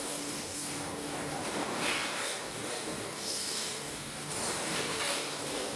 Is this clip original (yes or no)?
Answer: no